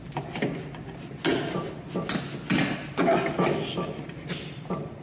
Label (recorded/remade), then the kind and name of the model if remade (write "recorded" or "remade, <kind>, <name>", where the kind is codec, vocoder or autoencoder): recorded